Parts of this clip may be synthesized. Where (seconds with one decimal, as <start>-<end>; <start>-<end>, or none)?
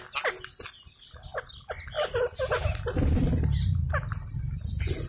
none